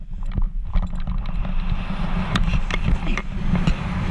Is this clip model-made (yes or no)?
no